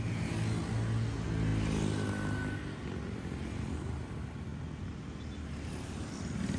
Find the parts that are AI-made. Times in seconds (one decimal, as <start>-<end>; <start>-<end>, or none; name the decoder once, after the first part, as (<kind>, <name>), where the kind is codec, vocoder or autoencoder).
none